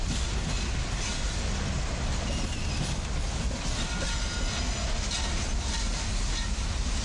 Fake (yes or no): no